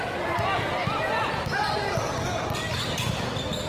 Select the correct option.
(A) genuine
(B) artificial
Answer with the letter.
A